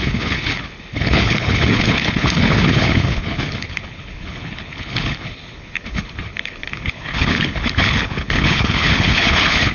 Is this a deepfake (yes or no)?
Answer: yes